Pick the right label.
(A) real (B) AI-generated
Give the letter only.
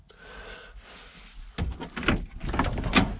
A